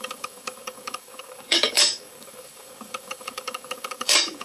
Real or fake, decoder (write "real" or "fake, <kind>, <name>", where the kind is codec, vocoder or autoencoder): fake, codec, DAC